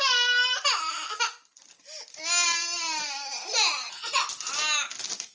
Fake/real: real